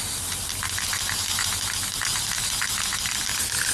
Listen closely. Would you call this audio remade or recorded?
recorded